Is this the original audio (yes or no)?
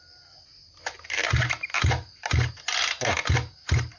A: yes